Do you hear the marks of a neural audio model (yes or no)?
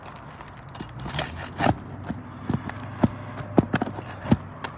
no